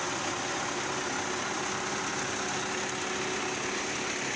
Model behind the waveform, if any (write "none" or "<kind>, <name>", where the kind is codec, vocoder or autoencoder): none